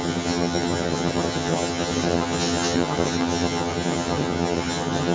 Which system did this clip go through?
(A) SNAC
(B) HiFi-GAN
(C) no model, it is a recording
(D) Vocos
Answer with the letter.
B